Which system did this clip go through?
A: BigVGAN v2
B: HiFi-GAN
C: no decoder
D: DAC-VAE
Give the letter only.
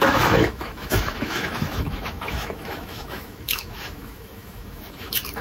D